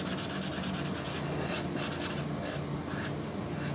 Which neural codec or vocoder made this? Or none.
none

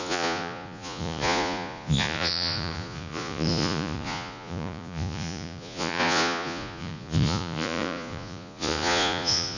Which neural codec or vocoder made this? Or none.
vocoder, Vocos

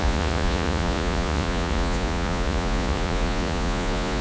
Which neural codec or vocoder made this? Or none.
vocoder, Vocos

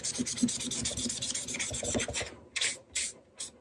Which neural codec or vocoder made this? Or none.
vocoder, BigVGAN v2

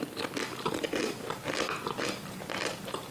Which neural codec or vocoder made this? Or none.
none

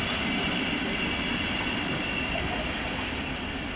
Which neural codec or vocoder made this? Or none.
none